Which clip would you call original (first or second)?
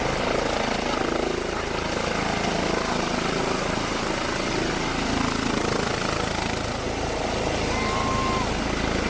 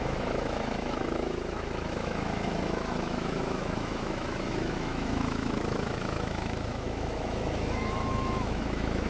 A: first